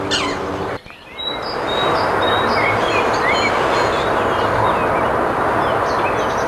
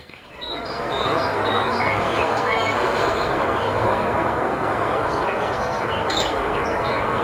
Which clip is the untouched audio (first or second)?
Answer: first